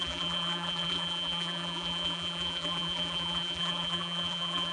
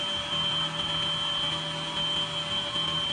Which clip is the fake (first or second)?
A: first